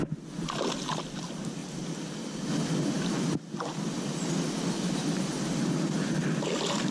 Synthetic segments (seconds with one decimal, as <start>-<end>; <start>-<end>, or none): none